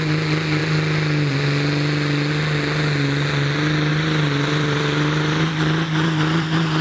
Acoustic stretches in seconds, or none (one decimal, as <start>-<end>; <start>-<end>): 0.0-3.9